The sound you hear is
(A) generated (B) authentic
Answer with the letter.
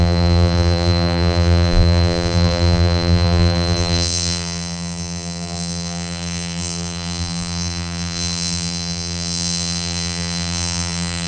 A